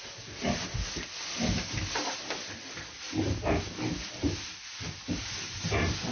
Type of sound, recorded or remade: recorded